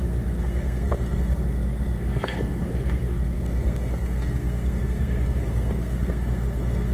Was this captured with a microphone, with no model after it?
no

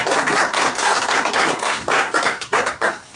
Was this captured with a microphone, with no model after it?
no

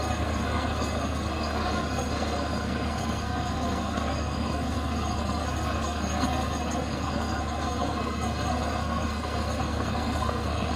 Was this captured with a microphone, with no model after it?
no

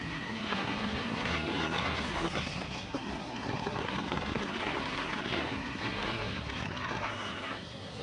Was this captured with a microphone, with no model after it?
no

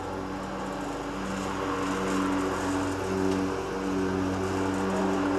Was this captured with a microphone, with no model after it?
yes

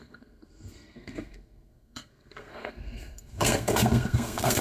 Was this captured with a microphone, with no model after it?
no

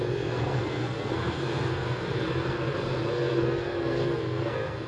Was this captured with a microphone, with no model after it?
no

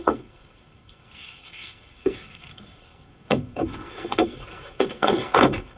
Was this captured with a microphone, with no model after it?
no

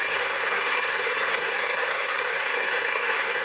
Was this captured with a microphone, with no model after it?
no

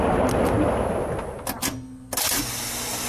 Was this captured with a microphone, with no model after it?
yes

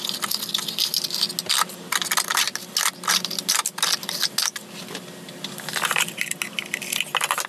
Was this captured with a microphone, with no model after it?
yes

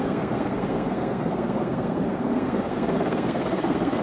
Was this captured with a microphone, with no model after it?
no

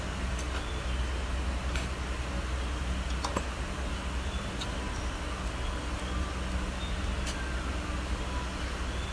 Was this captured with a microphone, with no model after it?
yes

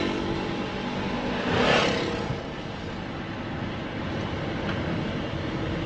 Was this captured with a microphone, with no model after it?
yes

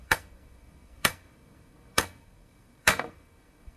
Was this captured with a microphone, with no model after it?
no